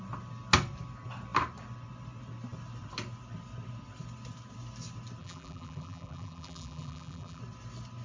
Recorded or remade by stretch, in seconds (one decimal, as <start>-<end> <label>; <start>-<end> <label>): 0.0-5.2 recorded; 5.2-7.4 remade; 7.4-8.0 recorded